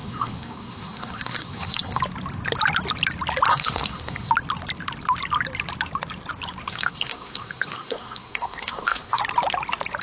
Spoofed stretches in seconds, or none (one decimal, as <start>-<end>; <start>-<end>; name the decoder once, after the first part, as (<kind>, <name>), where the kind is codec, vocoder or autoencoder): 0.0-2.0 (codec, SNAC); 3.5-4.3; 6.7-9.2